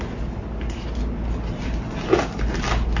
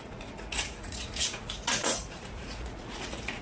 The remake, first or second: second